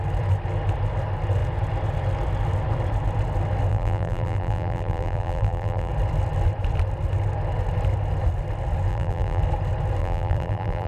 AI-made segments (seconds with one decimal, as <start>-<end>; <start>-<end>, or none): 3.7-5.9; 8.9-9.4; 10.0-10.9